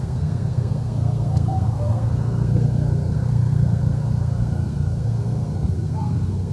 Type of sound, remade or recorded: remade